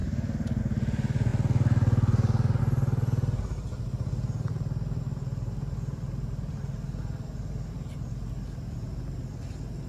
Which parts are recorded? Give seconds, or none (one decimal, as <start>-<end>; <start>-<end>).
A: 0.0-9.9